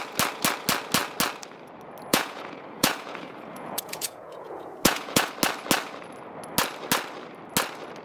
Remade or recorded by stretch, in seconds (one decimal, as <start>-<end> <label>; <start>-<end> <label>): 0.0-2.1 recorded; 2.1-5.3 remade; 5.3-8.0 recorded